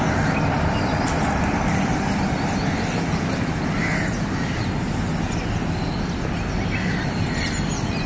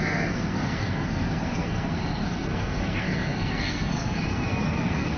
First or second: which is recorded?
first